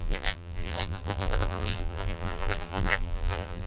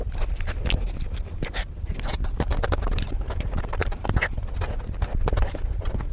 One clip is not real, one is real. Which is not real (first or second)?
first